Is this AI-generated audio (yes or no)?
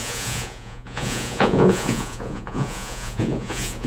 yes